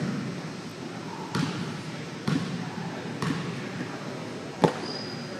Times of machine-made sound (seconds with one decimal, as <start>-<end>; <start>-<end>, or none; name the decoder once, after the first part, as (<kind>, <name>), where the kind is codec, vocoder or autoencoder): 0.7-3.9 (vocoder, BigVGAN v2)